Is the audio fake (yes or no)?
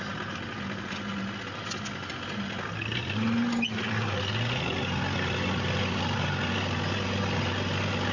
no